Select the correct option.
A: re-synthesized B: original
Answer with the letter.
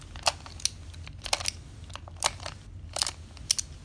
B